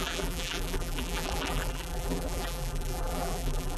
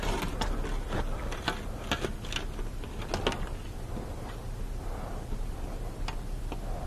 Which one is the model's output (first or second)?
first